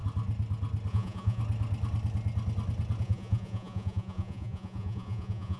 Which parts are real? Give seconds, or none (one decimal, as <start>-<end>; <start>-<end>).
0.0-0.9; 1.4-3.0